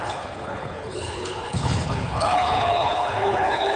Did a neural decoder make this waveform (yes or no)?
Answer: yes